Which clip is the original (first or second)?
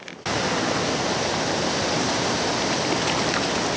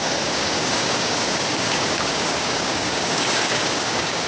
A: first